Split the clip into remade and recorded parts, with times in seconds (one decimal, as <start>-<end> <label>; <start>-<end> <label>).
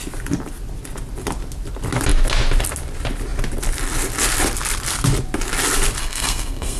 0.0-6.0 recorded; 6.0-6.8 remade